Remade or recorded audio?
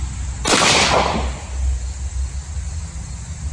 recorded